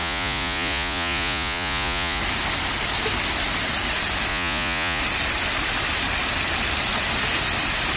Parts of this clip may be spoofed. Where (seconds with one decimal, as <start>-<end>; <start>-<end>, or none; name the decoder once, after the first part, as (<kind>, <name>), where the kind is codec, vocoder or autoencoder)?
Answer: 0.0-2.2 (vocoder, Vocos); 4.3-5.0